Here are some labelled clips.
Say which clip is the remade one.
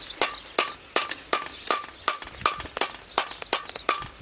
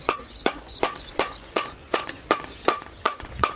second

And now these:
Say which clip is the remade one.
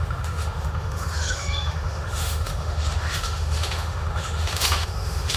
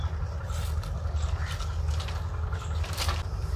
first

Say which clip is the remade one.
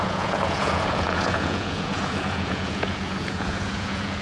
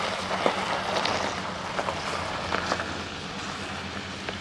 first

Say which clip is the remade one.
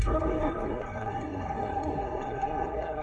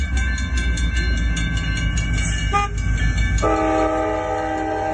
first